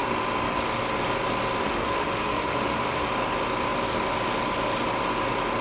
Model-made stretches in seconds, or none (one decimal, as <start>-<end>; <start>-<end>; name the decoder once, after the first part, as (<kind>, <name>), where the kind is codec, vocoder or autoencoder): 1.6-3.1 (autoencoder, DAC-VAE)